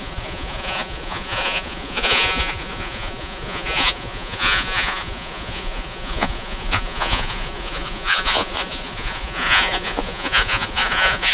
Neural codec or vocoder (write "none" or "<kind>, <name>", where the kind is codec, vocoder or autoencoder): vocoder, Vocos